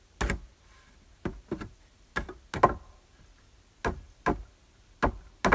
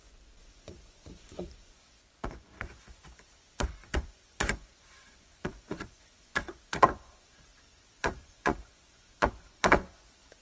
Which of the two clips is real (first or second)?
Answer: first